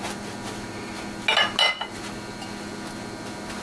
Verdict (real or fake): real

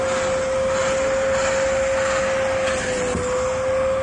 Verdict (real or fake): real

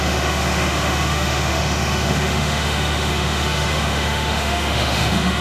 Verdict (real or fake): fake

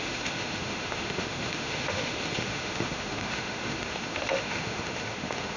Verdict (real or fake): fake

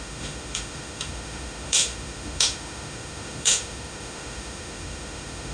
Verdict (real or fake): fake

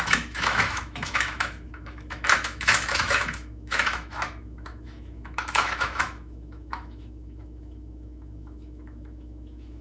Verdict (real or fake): fake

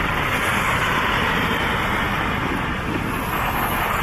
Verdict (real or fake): real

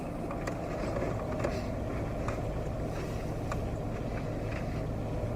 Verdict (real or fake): real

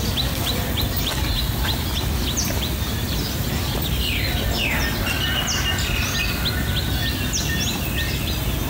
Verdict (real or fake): real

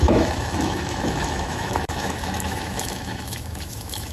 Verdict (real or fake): fake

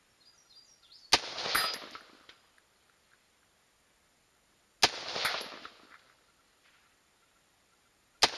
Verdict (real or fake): real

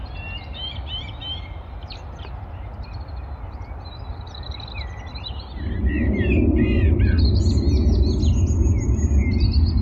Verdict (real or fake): real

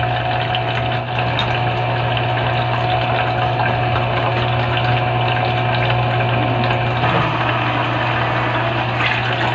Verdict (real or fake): real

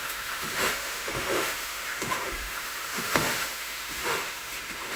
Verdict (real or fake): fake